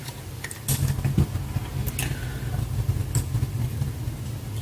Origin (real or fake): real